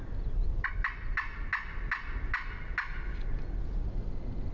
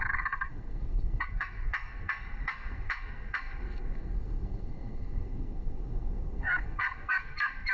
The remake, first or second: second